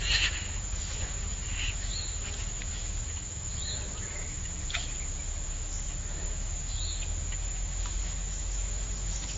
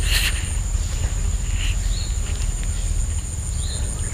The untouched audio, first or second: second